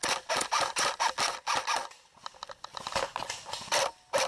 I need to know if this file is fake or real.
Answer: real